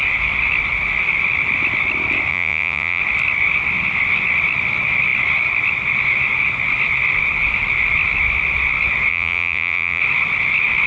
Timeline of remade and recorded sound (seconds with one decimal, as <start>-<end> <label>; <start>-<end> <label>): 0.0-2.3 recorded; 2.3-3.0 remade; 3.0-9.1 recorded; 9.1-10.0 remade; 10.0-10.9 recorded